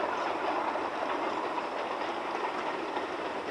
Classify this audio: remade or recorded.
recorded